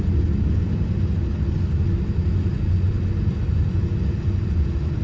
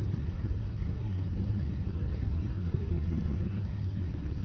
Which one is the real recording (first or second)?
first